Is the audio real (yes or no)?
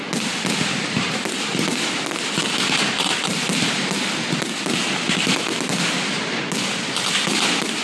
yes